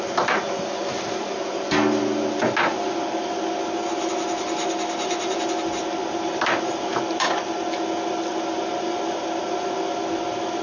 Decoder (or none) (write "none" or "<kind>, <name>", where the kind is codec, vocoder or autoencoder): none